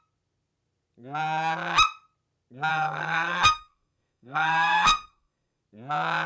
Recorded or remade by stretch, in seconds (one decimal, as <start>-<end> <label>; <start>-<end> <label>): 0.0-2.7 recorded; 2.7-5.6 remade; 5.6-6.3 recorded